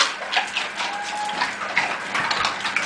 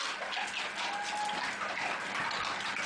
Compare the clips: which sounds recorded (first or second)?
first